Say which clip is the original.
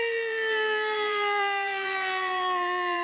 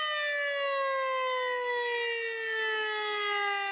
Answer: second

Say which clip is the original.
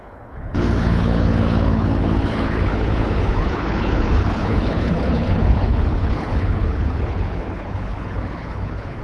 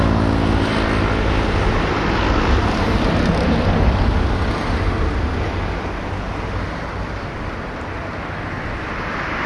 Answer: second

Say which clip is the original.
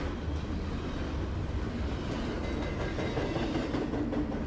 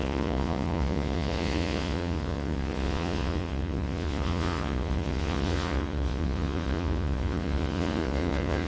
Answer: first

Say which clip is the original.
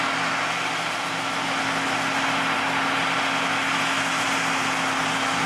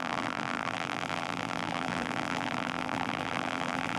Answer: first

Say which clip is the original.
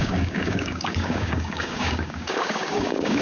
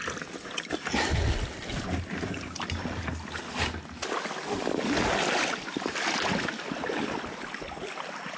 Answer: second